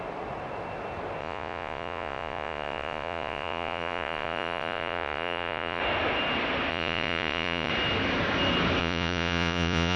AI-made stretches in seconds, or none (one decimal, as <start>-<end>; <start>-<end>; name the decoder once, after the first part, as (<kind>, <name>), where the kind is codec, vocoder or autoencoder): 1.2-5.8 (vocoder, Vocos); 6.7-7.7; 8.8-10.0